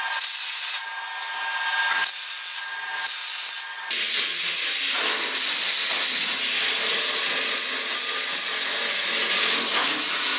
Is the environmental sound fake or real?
real